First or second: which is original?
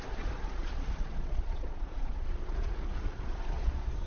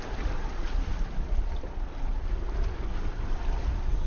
second